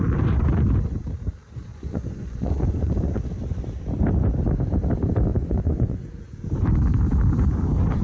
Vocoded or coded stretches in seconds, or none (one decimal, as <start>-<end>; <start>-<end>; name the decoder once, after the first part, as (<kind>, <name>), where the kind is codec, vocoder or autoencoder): 1.7-3.2 (vocoder, Vocos); 5.3-6.0